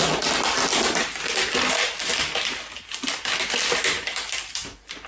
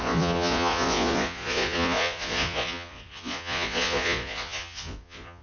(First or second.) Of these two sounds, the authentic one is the first